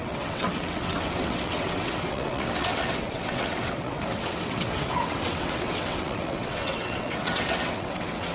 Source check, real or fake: fake